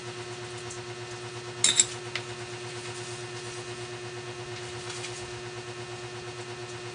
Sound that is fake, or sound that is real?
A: real